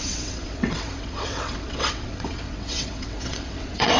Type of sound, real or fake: fake